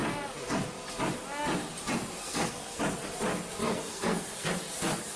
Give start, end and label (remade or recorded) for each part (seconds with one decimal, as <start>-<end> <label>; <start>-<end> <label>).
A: 0.0-2.2 recorded; 2.2-2.8 remade; 2.8-3.6 recorded; 3.6-4.5 remade; 4.5-5.2 recorded